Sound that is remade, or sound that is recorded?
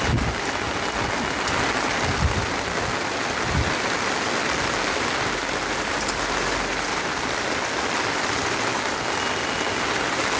recorded